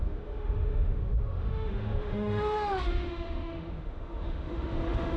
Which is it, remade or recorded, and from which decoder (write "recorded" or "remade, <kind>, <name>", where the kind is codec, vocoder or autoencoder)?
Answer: remade, autoencoder, DAC-VAE